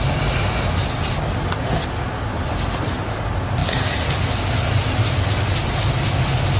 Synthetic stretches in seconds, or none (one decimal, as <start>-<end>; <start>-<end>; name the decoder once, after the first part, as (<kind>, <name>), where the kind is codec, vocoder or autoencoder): none